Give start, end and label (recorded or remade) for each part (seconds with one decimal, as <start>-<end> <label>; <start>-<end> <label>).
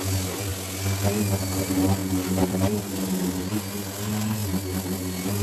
0.0-2.0 recorded; 2.0-2.8 remade; 2.8-5.4 recorded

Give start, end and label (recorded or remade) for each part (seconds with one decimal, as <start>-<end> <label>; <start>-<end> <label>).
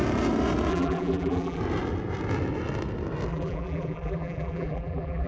0.0-0.7 recorded; 0.7-1.6 remade; 1.6-3.3 recorded; 3.3-5.3 remade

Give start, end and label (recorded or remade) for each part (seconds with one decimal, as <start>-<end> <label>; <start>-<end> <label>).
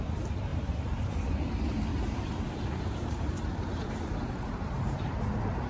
0.0-0.5 recorded; 0.5-1.3 remade; 1.3-1.9 recorded; 1.9-5.3 remade; 5.3-5.7 recorded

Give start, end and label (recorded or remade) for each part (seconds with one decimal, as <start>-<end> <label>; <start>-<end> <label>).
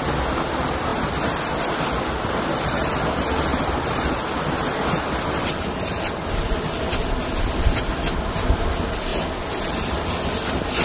0.0-0.9 recorded; 0.9-1.5 remade; 1.5-3.5 recorded; 3.5-6.4 remade; 6.4-9.1 recorded; 9.1-9.9 remade; 9.9-10.8 recorded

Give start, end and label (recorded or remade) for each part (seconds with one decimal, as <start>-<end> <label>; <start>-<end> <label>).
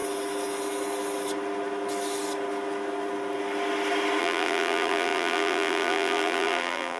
0.0-4.2 recorded; 4.2-7.0 remade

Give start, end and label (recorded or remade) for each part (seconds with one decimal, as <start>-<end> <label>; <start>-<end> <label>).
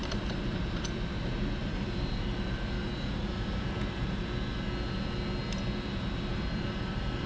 0.0-4.4 remade; 4.4-6.3 recorded; 6.3-7.3 remade